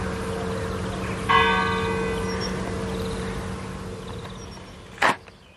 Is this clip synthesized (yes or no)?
no